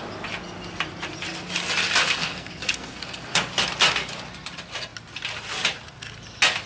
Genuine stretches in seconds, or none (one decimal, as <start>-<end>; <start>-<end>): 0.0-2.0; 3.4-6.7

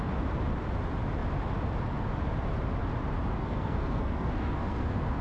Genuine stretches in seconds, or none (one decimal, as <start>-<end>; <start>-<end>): 0.0-3.4

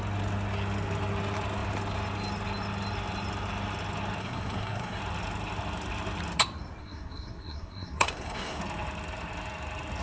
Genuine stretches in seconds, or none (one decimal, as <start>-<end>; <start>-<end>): 0.0-4.2; 5.0-6.8; 8.6-10.0

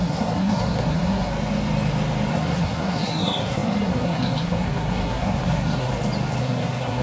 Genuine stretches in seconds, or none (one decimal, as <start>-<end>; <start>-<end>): 1.3-2.3; 5.9-6.4

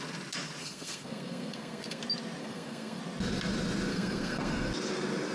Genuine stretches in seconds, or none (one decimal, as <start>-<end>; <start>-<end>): 0.0-0.6; 2.0-2.4; 3.0-3.9; 4.7-5.3

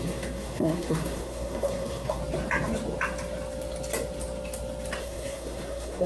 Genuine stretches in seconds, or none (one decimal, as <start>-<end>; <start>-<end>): 2.2-5.0

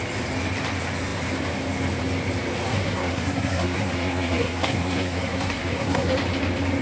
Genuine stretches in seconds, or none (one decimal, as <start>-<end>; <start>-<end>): 0.0-2.7; 6.1-6.8

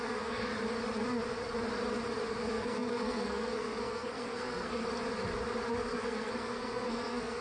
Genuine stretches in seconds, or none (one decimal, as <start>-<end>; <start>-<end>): 0.5-2.3; 4.8-5.7